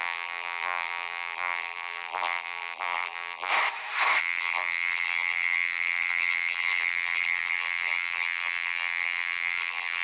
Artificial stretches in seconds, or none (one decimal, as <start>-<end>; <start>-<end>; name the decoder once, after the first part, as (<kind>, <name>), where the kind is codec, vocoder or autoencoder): 0.0-3.5 (vocoder, BigVGAN v2); 4.2-10.0